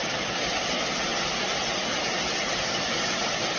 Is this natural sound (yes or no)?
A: yes